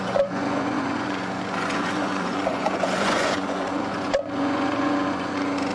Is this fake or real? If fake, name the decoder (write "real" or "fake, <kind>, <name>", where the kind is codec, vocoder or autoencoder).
fake, vocoder, Vocos